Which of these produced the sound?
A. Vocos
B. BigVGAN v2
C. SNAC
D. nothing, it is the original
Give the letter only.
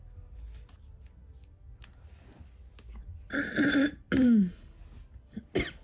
D